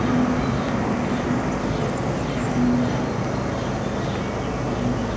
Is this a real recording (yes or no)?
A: yes